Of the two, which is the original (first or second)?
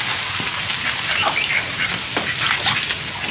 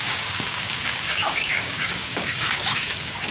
first